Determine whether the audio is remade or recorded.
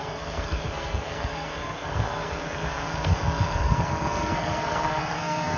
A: remade